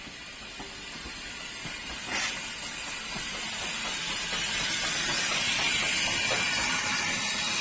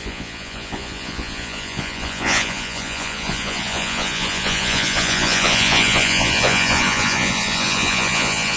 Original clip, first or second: first